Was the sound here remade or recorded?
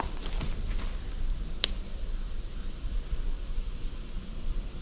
recorded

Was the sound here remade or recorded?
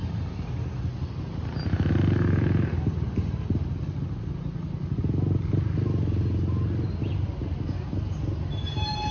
recorded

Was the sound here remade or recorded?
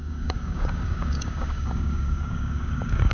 remade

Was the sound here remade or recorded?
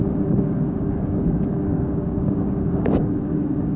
remade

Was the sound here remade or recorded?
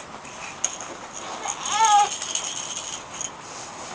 recorded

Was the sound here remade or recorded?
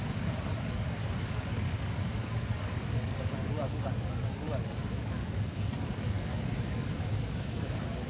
remade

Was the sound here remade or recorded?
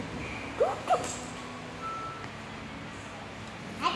recorded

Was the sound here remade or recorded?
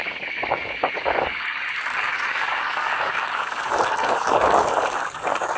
remade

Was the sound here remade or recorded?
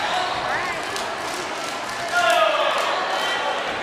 recorded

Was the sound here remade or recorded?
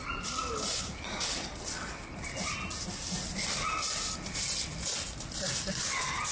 recorded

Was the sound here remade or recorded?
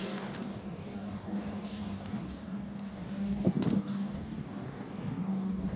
remade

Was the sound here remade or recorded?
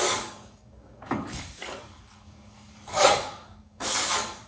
remade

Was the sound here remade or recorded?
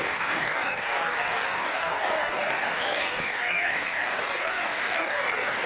remade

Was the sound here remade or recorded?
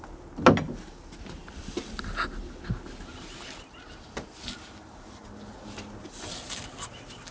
recorded